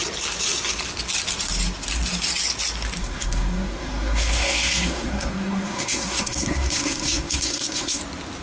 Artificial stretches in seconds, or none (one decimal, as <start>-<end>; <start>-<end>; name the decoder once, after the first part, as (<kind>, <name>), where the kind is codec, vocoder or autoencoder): 3.0-8.0 (codec, SNAC)